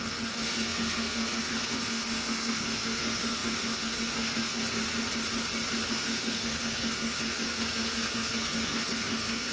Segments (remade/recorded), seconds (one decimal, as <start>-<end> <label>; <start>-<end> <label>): 0.0-4.8 remade; 4.8-5.9 recorded; 5.9-9.5 remade